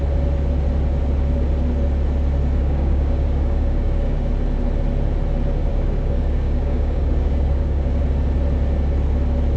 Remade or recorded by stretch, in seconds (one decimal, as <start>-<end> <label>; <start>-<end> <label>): 0.0-2.6 recorded; 2.6-4.3 remade; 4.3-5.7 recorded; 5.7-8.0 remade; 8.0-9.6 recorded